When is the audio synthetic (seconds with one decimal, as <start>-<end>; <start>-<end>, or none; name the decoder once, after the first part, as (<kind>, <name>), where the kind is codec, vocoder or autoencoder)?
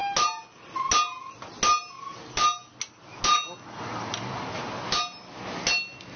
none